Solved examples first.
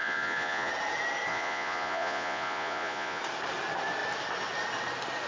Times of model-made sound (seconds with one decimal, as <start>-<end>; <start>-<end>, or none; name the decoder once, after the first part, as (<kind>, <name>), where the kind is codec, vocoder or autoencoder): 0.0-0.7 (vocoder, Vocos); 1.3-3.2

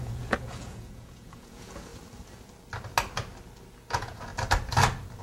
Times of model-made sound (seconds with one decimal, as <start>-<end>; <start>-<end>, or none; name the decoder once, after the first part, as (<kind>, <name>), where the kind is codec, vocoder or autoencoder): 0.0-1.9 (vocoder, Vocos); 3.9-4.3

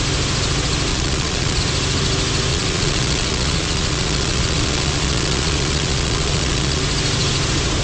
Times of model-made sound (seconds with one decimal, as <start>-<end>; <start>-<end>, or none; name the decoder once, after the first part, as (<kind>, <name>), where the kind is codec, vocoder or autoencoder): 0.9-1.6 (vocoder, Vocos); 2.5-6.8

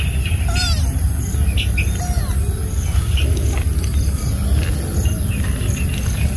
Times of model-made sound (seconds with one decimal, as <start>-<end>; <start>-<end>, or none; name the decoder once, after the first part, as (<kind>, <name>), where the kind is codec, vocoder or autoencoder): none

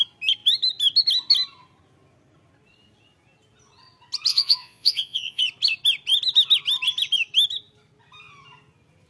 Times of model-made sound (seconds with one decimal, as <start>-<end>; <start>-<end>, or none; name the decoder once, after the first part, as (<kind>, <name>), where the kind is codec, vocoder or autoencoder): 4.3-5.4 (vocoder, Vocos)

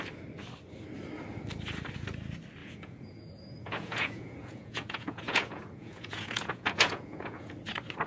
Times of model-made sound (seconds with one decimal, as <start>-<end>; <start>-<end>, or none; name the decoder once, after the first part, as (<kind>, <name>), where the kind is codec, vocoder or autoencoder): 2.6-7.5 (vocoder, Vocos)

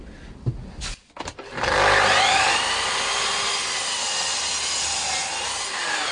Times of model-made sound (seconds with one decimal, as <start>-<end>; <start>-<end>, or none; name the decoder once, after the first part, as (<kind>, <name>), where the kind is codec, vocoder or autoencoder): none

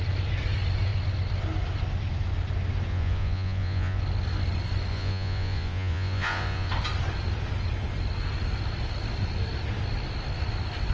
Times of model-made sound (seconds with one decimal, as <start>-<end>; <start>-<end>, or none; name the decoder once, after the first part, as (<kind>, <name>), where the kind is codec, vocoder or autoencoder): 2.9-4.0 (vocoder, Vocos); 4.9-6.7